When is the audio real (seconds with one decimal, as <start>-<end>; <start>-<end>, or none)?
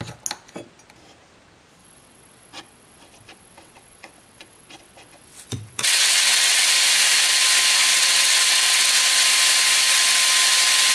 0.0-1.8; 6.7-7.9; 9.0-10.9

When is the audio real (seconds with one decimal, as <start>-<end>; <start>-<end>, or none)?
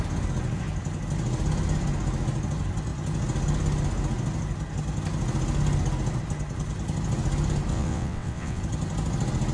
0.0-7.7; 8.6-9.5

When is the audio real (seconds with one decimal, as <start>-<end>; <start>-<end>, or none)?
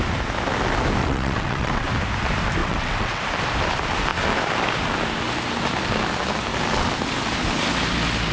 0.0-1.0; 1.9-2.6; 3.2-8.3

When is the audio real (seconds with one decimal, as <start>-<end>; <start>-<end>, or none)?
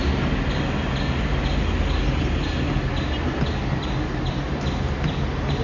0.0-5.6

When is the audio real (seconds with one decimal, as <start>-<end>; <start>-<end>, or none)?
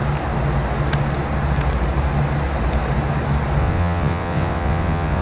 0.0-3.6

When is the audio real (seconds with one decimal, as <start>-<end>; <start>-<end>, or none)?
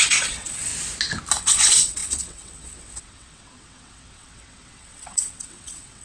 0.7-1.4